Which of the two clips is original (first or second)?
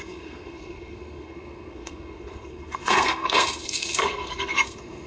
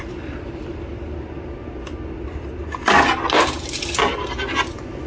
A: second